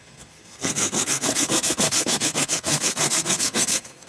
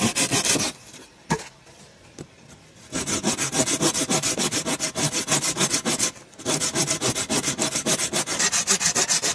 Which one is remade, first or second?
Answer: first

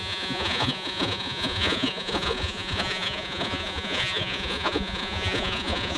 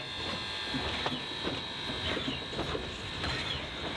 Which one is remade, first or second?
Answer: first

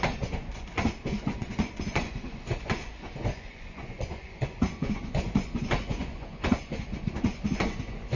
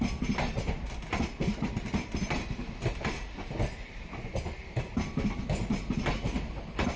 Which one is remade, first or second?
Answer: first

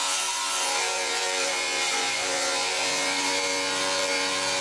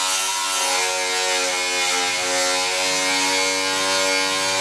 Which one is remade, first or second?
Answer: first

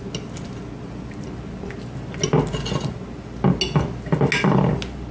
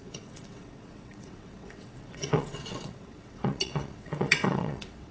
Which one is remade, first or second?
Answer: second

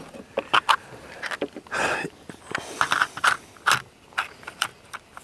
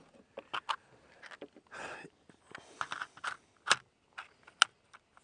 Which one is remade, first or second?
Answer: first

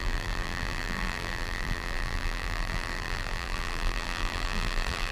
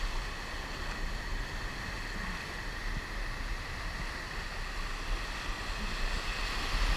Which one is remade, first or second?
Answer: first